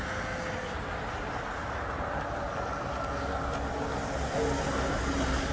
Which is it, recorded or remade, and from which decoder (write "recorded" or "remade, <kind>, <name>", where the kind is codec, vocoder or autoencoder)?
recorded